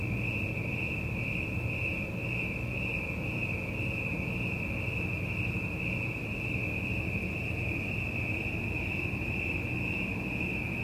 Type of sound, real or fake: real